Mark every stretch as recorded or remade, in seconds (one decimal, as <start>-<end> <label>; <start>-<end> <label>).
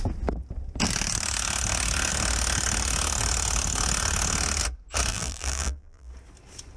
0.0-5.1 recorded; 5.1-6.1 remade; 6.1-6.8 recorded